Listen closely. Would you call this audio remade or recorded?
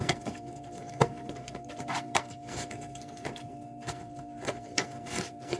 remade